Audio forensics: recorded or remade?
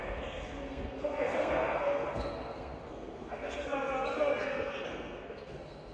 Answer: remade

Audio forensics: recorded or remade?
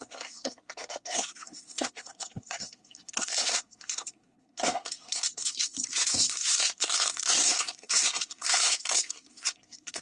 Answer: remade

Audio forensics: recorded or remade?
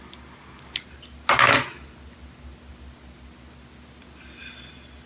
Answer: recorded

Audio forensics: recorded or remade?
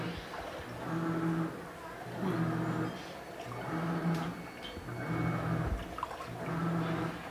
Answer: recorded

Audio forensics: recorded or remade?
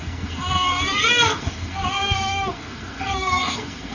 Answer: remade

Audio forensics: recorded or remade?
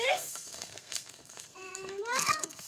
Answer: remade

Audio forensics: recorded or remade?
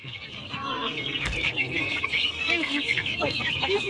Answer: remade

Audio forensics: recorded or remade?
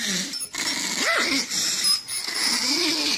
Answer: recorded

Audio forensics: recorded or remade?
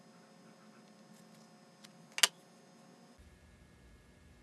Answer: recorded